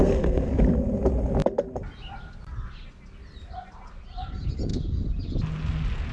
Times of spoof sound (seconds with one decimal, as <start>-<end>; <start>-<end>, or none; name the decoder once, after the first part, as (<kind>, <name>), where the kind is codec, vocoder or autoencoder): 0.0-0.5 (codec, SNAC)